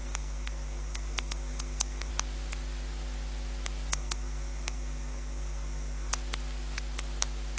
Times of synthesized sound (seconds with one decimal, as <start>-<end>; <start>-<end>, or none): 0.0-2.1; 3.9-6.1